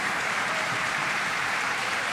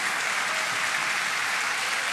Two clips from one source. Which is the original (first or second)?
second